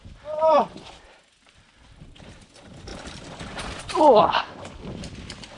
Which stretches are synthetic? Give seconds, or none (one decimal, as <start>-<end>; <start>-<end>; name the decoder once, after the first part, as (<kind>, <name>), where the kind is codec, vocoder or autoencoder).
2.9-4.2 (vocoder, BigVGAN v2)